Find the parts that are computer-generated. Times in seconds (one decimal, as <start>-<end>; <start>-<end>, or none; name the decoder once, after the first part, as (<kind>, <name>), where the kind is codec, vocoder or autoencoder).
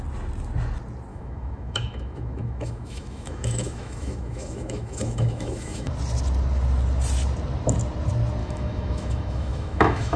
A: 1.1-5.9 (autoencoder, DAC-VAE); 8.4-10.2